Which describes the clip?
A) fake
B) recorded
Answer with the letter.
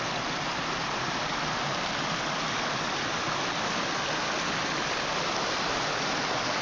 B